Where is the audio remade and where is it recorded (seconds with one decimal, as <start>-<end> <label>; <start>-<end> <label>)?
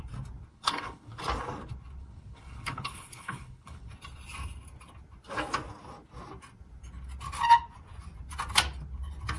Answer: 0.0-0.5 recorded; 0.5-1.2 remade; 1.2-2.0 recorded; 2.0-3.9 remade; 3.9-9.4 recorded